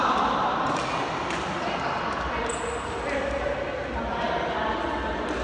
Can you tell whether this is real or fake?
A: real